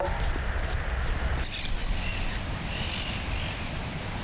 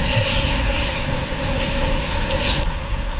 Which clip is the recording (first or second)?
first